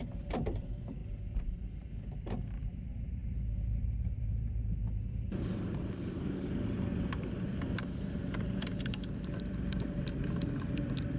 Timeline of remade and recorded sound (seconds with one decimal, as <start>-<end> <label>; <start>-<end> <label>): 0.0-11.2 remade